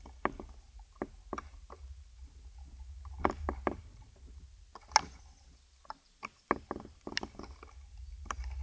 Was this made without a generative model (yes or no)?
yes